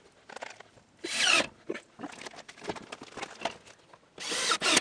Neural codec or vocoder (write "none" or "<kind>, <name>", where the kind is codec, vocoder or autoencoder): none